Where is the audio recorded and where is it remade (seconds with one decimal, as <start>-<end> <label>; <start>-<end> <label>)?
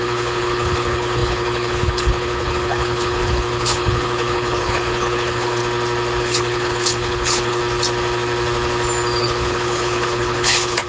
0.0-5.6 remade; 5.6-6.2 recorded; 6.2-7.6 remade; 7.6-9.2 recorded; 9.2-10.9 remade